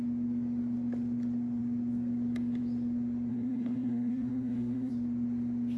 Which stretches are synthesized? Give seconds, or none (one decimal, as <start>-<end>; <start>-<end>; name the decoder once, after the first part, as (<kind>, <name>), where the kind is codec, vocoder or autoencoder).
3.3-4.9 (codec, SNAC)